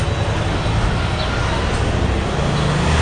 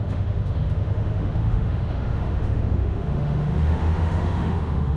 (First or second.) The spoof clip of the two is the second